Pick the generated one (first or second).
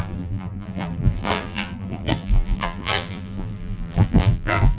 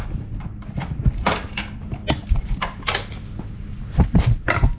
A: first